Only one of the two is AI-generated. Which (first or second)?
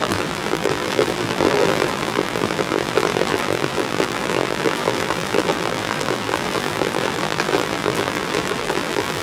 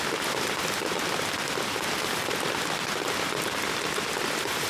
first